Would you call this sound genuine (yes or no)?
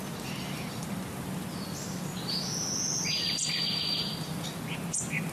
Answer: yes